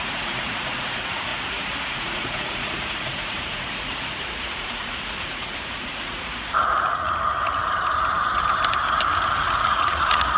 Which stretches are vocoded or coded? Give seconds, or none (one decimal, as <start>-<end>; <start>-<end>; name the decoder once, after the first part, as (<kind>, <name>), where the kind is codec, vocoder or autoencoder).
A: 0.0-1.3 (vocoder, Vocos); 1.9-7.6; 9.3-10.4